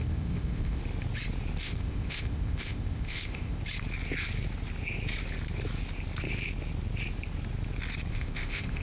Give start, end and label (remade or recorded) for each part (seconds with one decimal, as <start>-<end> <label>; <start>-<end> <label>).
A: 0.0-0.8 remade; 0.8-1.6 recorded; 1.6-3.6 remade; 3.6-8.1 recorded; 8.1-8.8 remade